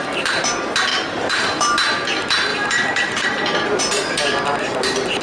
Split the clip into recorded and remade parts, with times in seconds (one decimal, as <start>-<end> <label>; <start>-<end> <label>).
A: 0.0-0.9 recorded; 0.9-1.6 remade; 1.6-2.5 recorded; 2.5-3.8 remade; 3.8-5.2 recorded